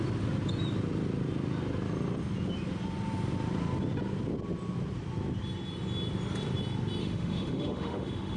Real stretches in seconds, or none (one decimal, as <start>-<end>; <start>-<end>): 0.0-7.0